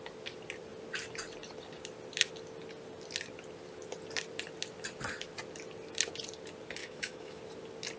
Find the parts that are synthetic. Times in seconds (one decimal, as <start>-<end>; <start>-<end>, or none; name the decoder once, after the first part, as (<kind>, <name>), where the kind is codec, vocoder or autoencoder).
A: 6.8-7.4 (autoencoder, DAC-VAE)